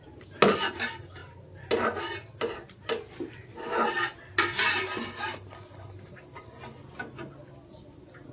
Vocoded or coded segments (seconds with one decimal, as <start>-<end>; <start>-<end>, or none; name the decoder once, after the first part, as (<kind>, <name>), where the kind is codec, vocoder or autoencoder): none